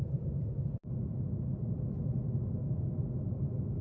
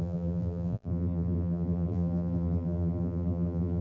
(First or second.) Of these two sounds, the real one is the first